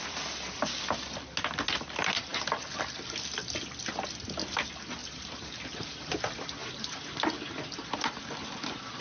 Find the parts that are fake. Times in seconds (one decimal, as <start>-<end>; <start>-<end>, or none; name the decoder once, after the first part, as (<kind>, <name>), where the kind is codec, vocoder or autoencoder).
5.0-6.1 (vocoder, BigVGAN v2)

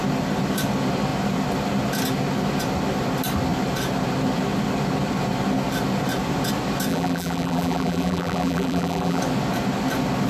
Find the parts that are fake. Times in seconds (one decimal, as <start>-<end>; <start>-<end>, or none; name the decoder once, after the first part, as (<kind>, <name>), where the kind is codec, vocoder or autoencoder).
6.9-9.2 (vocoder, BigVGAN v2)

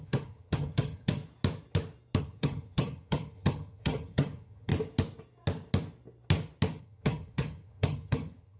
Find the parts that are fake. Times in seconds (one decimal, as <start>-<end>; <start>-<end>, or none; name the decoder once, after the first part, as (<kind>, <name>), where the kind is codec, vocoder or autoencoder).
0.0-1.2 (vocoder, HiFi-GAN); 2.2-4.7; 6.8-8.6